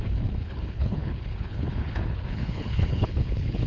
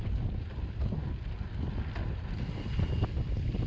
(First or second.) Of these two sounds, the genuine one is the second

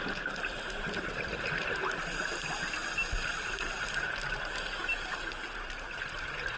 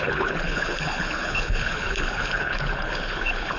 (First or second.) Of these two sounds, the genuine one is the first